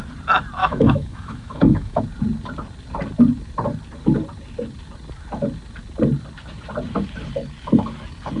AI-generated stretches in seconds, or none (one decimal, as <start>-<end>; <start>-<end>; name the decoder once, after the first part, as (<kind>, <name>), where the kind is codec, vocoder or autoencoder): 0.6-2.0 (autoencoder, DAC-VAE)